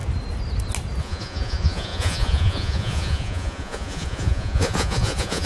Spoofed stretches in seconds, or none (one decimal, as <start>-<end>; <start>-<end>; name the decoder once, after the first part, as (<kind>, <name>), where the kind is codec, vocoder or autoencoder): 1.0-5.5 (vocoder, Vocos)